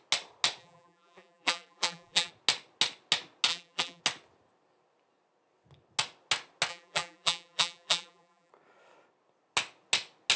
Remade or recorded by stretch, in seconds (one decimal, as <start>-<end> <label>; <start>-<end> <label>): 0.0-0.6 recorded; 0.6-2.3 remade; 2.3-3.5 recorded; 3.5-4.0 remade; 4.0-6.7 recorded; 6.7-8.5 remade; 8.5-10.4 recorded